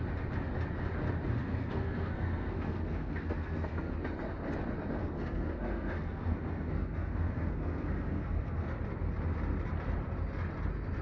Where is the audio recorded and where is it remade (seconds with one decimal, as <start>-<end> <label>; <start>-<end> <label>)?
0.0-1.4 recorded; 1.4-3.9 remade; 3.9-5.0 recorded; 5.0-8.8 remade; 8.8-11.0 recorded